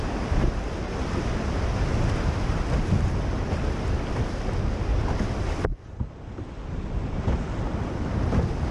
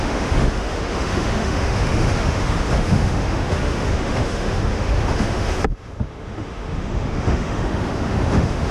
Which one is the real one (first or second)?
first